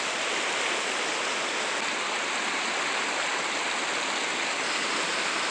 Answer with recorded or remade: recorded